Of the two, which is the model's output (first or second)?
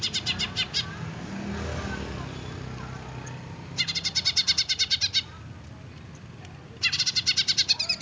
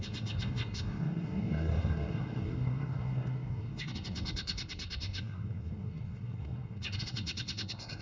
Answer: second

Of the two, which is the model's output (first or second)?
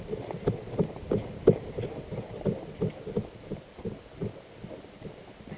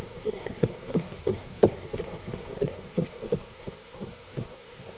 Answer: second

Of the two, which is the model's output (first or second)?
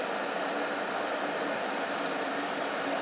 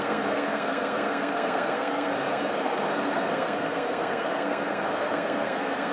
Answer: second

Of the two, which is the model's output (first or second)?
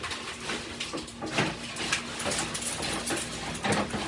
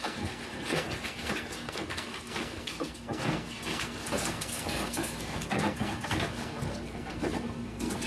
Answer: second